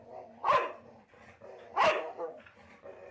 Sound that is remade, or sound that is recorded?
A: recorded